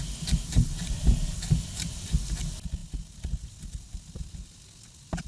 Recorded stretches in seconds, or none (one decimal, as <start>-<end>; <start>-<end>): 0.0-5.3